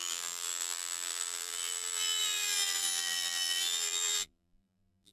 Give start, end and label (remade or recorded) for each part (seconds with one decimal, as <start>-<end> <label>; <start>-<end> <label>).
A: 0.0-5.1 remade